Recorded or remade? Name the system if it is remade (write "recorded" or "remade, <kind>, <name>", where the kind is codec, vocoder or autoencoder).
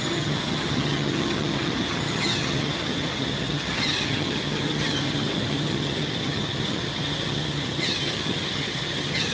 remade, vocoder, HiFi-GAN